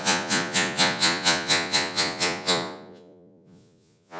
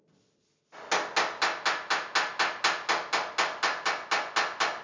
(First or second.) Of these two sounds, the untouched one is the second